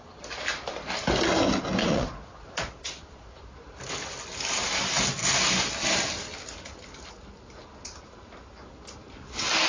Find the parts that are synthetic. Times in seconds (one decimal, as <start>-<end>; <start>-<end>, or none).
1.8-3.4